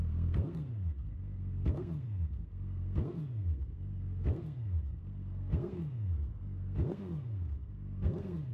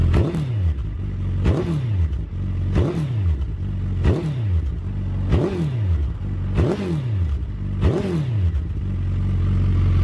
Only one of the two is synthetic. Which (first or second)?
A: first